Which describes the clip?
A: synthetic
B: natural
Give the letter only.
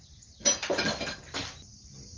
B